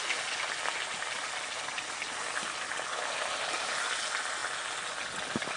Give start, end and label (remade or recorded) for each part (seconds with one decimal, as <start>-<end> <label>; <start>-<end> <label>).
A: 0.0-5.6 recorded